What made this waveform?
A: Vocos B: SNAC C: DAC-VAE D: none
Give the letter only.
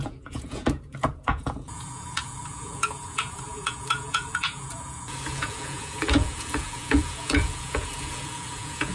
A